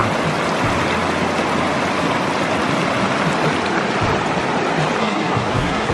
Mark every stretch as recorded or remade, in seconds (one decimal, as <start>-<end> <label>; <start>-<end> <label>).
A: 0.0-5.0 recorded; 5.0-5.9 remade